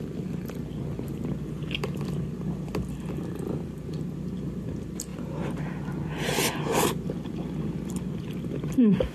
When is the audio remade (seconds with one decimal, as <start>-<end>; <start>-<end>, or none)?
none